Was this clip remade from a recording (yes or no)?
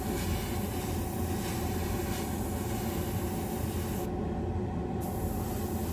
no